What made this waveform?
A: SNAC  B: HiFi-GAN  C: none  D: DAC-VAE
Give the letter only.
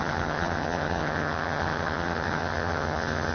B